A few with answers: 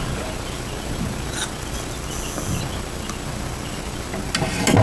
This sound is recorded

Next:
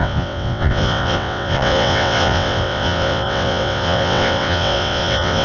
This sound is remade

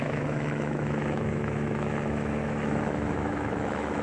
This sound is remade